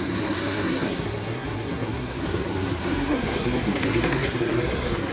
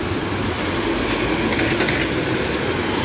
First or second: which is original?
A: second